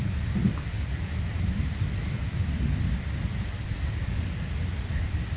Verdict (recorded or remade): recorded